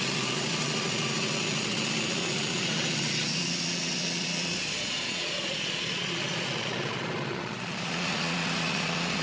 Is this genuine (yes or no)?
no